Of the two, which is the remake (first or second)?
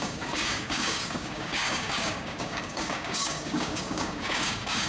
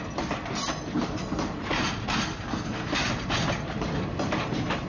first